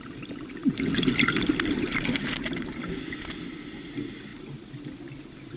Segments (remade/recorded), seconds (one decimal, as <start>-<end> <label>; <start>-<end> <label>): 0.0-5.6 recorded